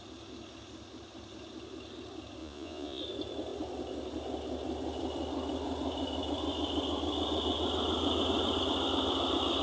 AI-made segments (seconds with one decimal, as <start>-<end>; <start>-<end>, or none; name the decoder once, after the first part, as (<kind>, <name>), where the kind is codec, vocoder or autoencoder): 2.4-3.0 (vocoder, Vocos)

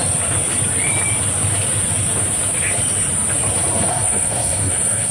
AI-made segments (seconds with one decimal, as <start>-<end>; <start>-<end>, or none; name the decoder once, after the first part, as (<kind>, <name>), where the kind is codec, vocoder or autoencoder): 3.9-5.1 (codec, SNAC)

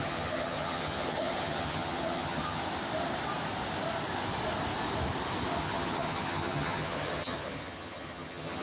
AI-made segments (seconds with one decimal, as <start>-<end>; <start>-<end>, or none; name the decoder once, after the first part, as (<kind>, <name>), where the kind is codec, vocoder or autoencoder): 0.0-2.6 (vocoder, HiFi-GAN); 5.6-8.6

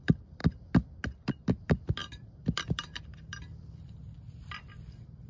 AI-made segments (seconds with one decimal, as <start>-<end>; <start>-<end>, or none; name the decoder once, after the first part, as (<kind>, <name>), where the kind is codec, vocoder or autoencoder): 0.0-0.4 (vocoder, BigVGAN v2); 1.3-5.3